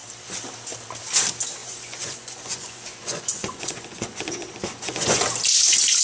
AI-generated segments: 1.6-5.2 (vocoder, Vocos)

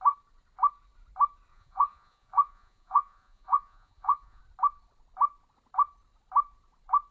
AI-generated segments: 1.5-4.4 (vocoder, Vocos)

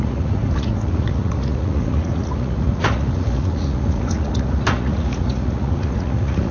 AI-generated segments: 0.0-6.5 (vocoder, Vocos)